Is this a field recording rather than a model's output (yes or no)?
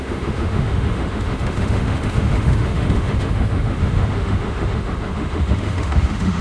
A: no